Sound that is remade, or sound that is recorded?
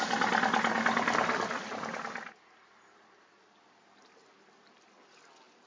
recorded